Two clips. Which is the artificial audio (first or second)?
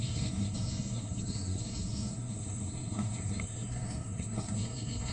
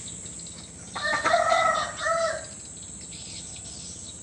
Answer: first